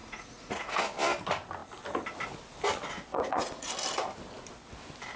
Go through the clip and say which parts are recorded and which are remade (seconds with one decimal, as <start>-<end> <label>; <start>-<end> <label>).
0.0-0.8 remade; 0.8-3.1 recorded; 3.1-3.7 remade; 3.7-5.2 recorded